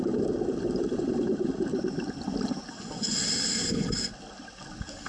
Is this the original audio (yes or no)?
yes